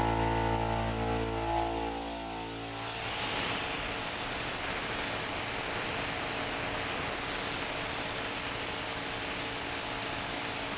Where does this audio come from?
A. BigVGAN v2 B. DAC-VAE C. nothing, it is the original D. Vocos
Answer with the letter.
C